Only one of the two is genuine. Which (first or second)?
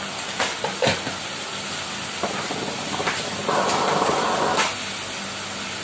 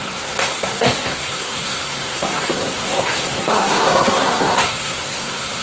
first